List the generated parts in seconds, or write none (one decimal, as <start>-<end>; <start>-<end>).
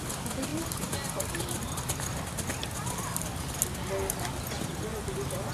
none